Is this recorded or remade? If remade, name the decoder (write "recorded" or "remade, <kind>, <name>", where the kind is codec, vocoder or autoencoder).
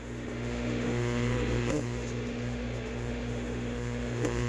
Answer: remade, autoencoder, DAC-VAE